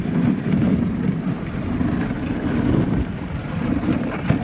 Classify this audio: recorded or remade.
recorded